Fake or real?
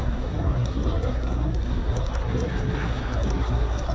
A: fake